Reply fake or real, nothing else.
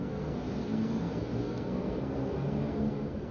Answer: fake